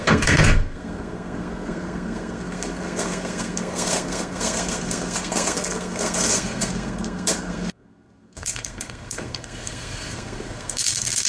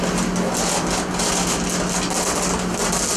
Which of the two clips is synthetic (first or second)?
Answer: first